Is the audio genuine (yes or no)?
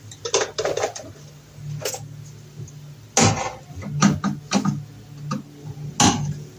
yes